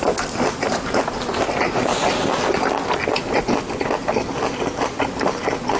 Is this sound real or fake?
real